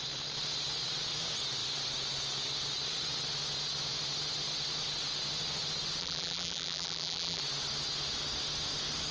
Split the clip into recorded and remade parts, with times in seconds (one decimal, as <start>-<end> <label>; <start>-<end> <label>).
0.0-6.0 recorded; 6.0-7.4 remade; 7.4-9.1 recorded

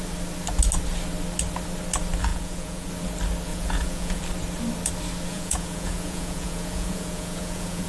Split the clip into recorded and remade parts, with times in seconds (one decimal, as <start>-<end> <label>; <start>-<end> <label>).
0.0-2.3 recorded; 2.3-2.9 remade; 2.9-3.5 recorded; 3.5-4.2 remade; 4.2-5.3 recorded; 5.3-7.9 remade

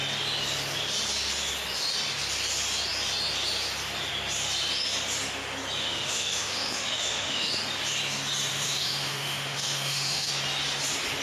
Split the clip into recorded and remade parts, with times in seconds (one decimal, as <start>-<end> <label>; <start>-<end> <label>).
0.0-5.8 recorded; 5.8-7.5 remade; 7.5-8.5 recorded; 8.5-10.3 remade; 10.3-11.2 recorded

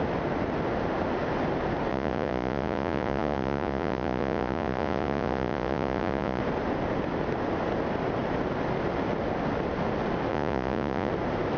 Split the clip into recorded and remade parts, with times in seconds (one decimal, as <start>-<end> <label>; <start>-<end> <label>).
0.0-1.9 recorded; 1.9-6.4 remade; 6.4-10.3 recorded; 10.3-11.1 remade; 11.1-11.6 recorded

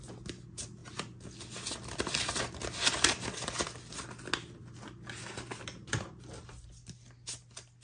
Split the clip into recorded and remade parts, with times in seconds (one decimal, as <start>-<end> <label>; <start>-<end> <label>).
0.0-7.8 recorded